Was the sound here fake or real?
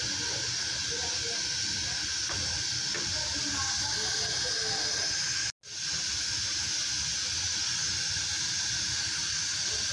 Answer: real